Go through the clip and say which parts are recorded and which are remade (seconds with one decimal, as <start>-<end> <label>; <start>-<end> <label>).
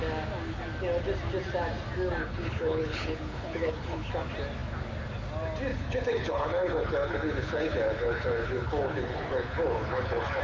0.0-2.2 recorded; 2.2-4.1 remade; 4.1-5.7 recorded; 5.7-10.4 remade